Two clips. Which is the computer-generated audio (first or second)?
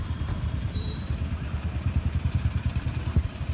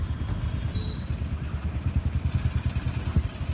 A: first